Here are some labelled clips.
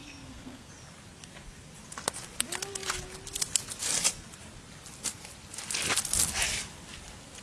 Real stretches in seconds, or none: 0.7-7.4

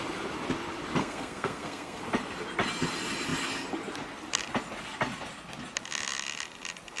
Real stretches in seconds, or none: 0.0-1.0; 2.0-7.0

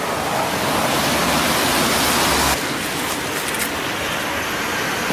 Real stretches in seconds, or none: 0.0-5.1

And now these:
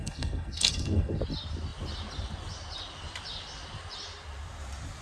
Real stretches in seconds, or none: 1.2-5.0